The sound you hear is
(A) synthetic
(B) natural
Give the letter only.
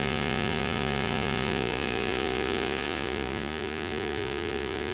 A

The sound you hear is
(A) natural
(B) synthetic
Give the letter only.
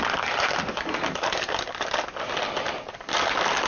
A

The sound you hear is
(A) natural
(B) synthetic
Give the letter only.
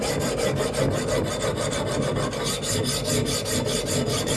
A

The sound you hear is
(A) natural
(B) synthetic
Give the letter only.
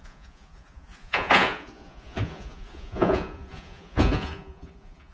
B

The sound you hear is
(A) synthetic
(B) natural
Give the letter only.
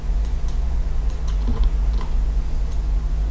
A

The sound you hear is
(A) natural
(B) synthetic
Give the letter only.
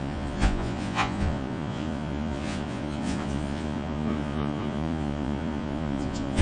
B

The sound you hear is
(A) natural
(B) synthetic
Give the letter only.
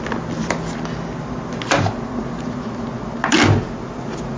A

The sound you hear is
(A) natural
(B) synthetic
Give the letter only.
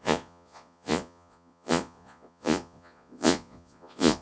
B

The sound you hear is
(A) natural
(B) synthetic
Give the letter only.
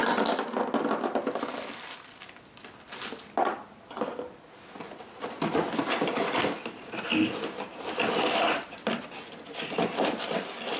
A